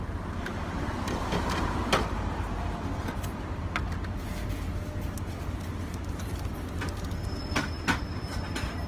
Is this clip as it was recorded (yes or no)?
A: yes